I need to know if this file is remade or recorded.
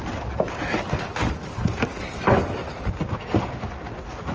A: recorded